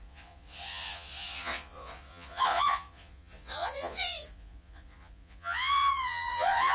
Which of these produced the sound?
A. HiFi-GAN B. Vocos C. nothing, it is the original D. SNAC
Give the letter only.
B